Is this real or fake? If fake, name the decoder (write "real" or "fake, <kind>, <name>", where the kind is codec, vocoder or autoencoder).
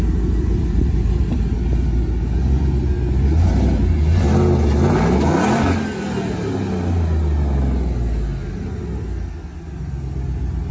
real